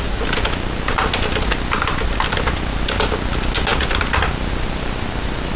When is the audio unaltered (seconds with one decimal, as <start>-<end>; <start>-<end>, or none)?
0.0-5.6